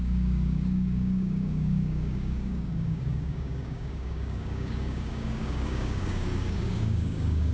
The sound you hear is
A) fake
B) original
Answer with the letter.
A